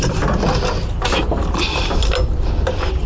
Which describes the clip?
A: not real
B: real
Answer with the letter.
B